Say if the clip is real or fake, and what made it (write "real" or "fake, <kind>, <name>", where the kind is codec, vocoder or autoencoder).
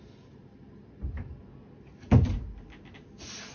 real